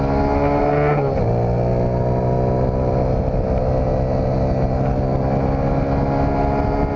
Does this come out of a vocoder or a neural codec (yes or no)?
no